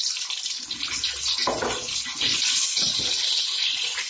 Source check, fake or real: real